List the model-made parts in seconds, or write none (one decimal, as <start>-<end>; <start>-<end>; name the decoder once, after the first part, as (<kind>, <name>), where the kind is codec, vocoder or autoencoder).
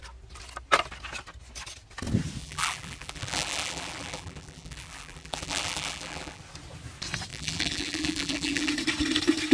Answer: 2.4-6.4 (vocoder, BigVGAN v2); 7.3-8.7